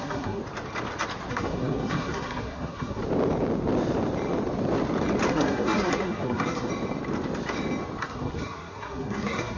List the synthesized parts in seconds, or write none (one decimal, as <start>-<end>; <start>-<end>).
0.0-0.4; 1.3-3.0; 5.3-6.7; 8.0-9.6